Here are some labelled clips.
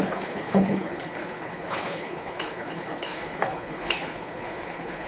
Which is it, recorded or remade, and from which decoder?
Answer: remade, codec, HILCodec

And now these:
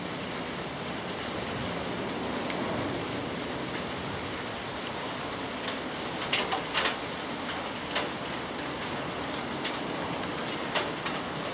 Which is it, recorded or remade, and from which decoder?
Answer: recorded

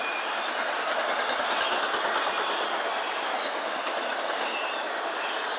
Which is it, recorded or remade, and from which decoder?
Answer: recorded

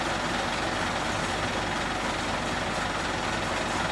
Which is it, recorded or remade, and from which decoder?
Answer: recorded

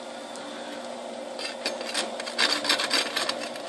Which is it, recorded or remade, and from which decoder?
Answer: recorded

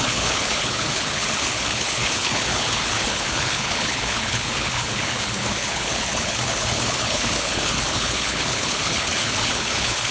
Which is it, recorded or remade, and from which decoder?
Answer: remade, codec, HILCodec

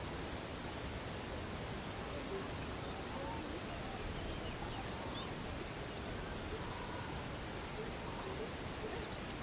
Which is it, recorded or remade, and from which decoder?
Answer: recorded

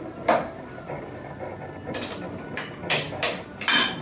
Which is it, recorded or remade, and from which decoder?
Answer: recorded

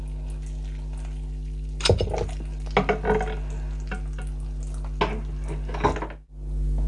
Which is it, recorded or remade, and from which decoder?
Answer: recorded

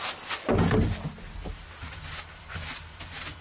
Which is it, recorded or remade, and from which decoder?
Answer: recorded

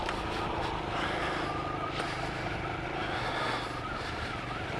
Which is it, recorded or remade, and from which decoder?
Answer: recorded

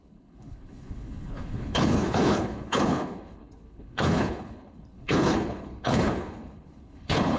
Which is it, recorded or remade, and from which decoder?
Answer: remade, codec, HILCodec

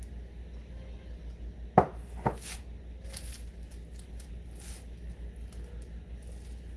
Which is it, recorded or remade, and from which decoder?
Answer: recorded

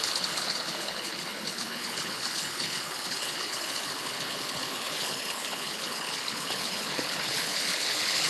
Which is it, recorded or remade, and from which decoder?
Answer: remade, codec, HILCodec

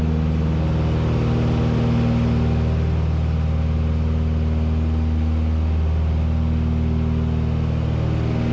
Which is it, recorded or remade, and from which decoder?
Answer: recorded